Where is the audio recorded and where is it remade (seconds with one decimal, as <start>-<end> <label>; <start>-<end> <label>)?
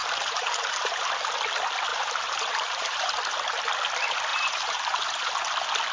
0.0-1.1 remade; 1.1-1.9 recorded; 1.9-3.1 remade; 3.1-4.3 recorded; 4.3-5.3 remade; 5.3-5.9 recorded